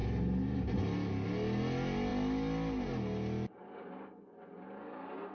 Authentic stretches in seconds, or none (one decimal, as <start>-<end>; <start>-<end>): 0.0-5.3